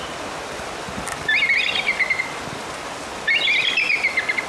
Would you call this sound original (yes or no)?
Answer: yes